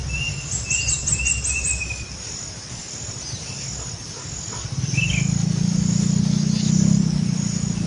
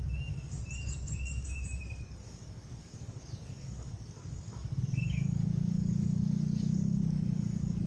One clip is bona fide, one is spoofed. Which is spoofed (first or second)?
second